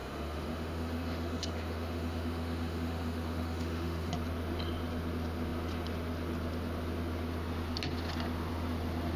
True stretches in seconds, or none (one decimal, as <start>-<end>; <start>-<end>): 4.1-9.2

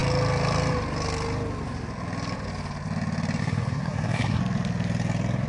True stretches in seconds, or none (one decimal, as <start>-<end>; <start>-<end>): 0.0-3.4; 4.4-5.5

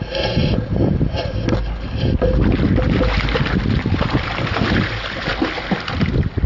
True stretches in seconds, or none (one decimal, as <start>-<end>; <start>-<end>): 0.0-6.5